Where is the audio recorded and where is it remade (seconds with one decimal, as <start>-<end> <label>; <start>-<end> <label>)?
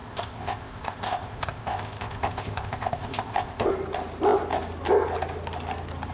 0.0-3.7 remade; 3.7-6.1 recorded